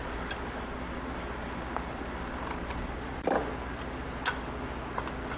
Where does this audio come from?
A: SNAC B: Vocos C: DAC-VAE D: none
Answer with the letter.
D